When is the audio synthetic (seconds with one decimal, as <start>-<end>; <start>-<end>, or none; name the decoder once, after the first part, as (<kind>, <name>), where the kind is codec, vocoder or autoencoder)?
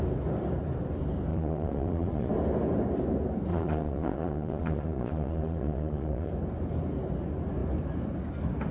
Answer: 1.3-2.3 (vocoder, Vocos); 3.5-6.3